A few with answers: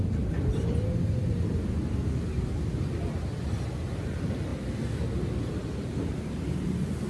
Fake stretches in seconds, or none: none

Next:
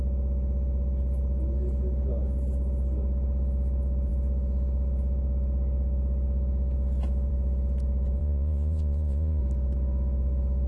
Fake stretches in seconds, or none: 8.2-9.4 (vocoder, Vocos)

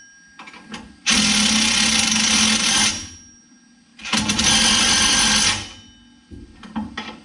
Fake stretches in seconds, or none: none

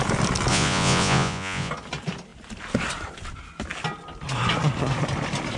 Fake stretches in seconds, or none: 0.5-1.7 (vocoder, Vocos)